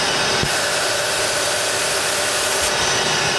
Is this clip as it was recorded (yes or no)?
yes